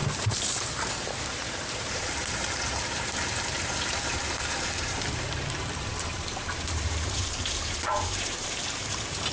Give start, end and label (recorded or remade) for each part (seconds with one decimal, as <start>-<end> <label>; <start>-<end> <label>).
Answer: 0.0-9.3 remade